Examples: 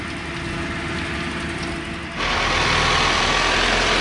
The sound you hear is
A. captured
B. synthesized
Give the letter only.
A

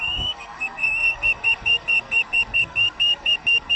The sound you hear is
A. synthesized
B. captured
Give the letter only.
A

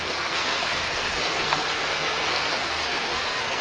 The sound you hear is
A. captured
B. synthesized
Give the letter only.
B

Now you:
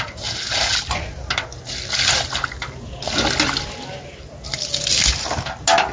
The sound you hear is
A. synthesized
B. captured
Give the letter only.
B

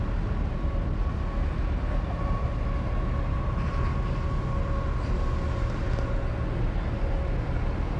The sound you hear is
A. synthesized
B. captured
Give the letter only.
B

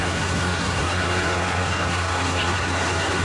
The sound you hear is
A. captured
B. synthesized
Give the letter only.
B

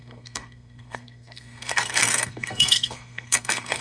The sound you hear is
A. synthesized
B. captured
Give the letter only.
A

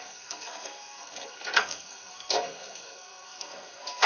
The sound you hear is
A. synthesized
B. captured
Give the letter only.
A